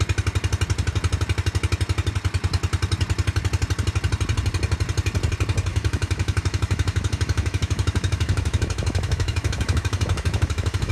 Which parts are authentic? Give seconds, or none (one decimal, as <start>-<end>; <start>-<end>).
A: 0.0-5.7